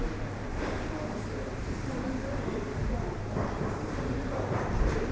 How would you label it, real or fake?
fake